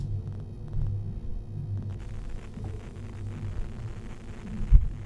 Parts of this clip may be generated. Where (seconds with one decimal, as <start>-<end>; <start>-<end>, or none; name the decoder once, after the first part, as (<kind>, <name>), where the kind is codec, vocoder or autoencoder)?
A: none